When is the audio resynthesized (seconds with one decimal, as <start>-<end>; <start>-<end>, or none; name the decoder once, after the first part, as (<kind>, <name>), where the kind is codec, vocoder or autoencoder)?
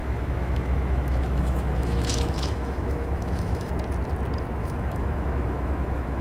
0.0-3.7 (autoencoder, DAC-VAE); 4.6-6.2